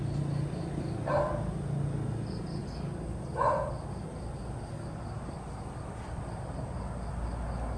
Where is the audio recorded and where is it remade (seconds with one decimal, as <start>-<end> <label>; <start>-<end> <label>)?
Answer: 0.0-7.8 recorded